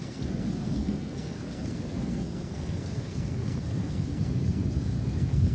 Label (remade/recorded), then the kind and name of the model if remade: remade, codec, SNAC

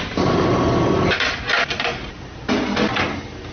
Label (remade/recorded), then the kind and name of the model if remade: recorded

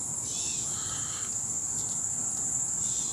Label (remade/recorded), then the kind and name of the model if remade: recorded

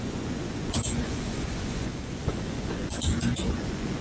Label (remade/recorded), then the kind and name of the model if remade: remade, vocoder, Vocos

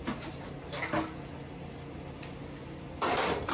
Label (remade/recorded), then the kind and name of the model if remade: recorded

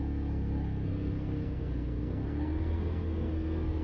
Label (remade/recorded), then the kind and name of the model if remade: remade, codec, SNAC